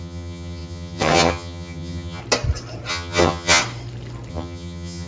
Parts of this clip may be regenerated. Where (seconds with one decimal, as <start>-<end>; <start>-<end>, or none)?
0.0-2.2; 2.9-3.6; 4.3-5.1